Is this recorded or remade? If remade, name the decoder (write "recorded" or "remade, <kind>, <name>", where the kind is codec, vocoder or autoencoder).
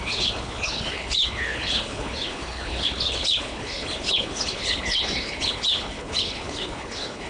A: remade, codec, HILCodec